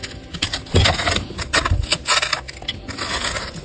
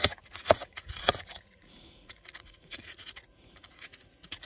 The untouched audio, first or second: first